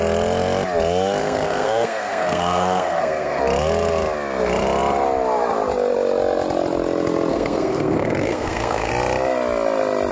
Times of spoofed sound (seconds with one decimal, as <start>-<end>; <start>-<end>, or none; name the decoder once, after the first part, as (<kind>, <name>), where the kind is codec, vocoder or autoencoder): 1.2-3.4 (codec, SNAC); 7.3-8.9